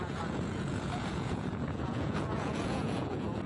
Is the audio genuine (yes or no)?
no